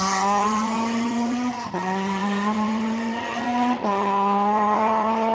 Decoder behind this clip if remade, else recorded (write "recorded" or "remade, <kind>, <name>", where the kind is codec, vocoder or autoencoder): remade, vocoder, HiFi-GAN